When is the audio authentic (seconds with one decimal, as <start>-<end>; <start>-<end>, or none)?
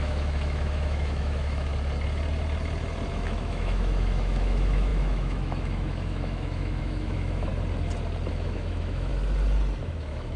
1.7-3.1; 7.5-8.3; 9.1-9.8